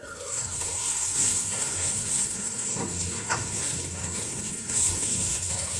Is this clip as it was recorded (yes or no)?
no